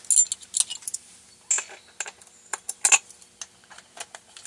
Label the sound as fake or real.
real